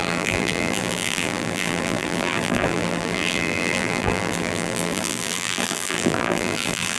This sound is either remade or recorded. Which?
remade